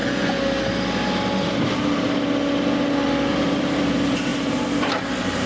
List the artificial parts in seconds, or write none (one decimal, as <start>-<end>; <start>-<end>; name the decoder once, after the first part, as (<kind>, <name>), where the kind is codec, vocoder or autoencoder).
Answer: 3.3-5.5 (vocoder, BigVGAN v2)